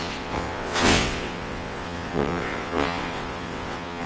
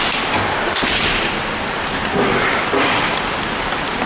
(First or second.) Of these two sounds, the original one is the second